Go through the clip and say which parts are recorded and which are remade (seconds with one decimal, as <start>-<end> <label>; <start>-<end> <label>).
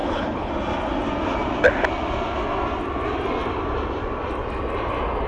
0.0-0.5 remade; 0.5-5.3 recorded